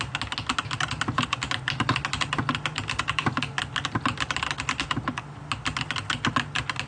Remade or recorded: recorded